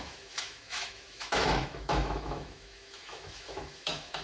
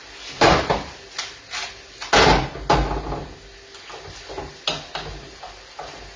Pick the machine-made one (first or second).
first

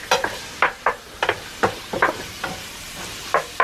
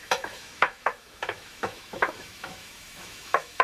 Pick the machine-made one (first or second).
second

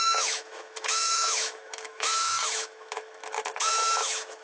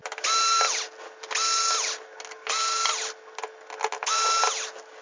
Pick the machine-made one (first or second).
first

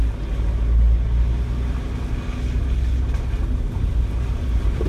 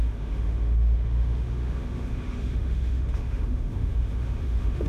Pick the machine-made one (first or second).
second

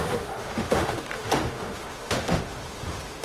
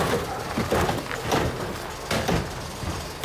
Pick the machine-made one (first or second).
first